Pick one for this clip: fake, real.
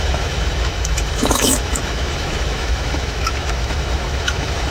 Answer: fake